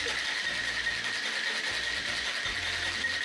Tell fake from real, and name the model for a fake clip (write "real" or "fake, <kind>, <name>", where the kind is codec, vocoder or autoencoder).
real